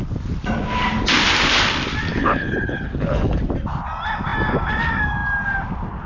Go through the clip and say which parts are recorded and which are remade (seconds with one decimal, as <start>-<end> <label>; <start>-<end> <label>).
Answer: 0.0-2.1 recorded; 2.1-3.4 remade; 3.4-6.1 recorded